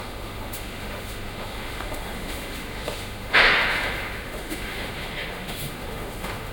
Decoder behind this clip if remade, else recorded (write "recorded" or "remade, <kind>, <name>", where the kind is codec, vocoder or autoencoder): remade, autoencoder, DAC-VAE